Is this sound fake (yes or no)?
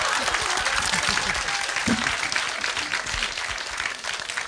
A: no